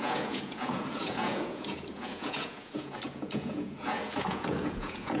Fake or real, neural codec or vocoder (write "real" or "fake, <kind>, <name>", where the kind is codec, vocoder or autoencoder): fake, vocoder, Vocos